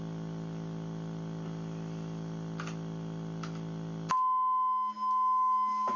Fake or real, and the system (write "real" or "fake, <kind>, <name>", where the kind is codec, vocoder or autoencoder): real